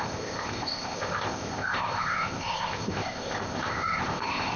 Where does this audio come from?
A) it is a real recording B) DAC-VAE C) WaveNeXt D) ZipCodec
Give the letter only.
D